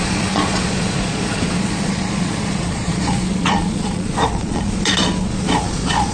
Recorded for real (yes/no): no